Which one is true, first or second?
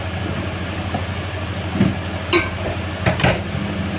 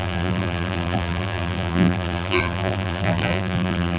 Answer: first